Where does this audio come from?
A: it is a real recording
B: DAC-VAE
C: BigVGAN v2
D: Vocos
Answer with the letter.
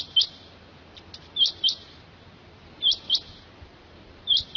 A